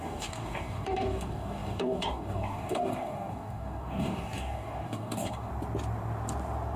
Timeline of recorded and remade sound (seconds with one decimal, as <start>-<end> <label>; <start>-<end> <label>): 0.0-5.5 remade; 5.5-6.8 recorded